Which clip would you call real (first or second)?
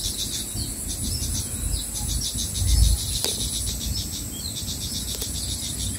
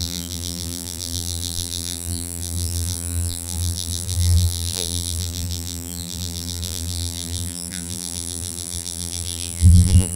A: first